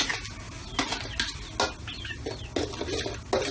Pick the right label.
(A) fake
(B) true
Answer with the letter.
B